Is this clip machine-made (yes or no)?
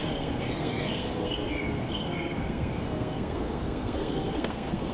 yes